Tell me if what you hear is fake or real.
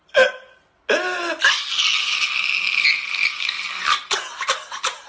real